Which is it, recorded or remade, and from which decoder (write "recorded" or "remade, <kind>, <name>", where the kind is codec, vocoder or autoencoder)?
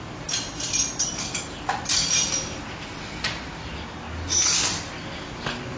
recorded